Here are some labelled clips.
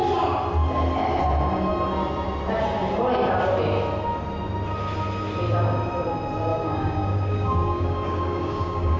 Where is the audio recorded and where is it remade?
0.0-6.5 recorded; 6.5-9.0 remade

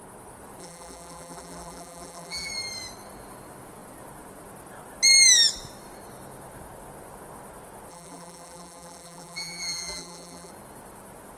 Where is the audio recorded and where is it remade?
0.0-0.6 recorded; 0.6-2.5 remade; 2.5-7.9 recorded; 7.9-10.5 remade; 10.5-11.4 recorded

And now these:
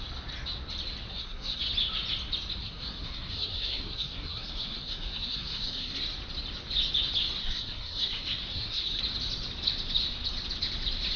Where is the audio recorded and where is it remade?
0.0-1.1 recorded; 1.1-1.6 remade; 1.6-2.6 recorded; 2.6-6.0 remade; 6.0-7.4 recorded; 7.4-9.0 remade; 9.0-11.2 recorded